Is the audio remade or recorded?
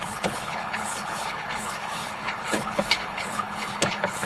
remade